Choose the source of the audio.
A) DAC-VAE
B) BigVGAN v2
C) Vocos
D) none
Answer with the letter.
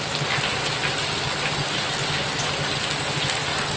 D